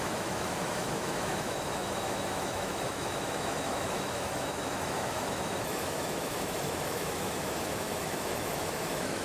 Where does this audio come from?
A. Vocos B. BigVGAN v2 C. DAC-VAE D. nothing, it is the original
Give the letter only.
C